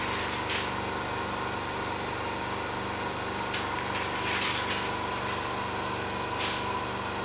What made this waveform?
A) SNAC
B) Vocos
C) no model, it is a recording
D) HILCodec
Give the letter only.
C